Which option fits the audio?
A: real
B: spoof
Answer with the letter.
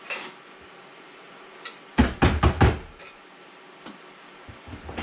A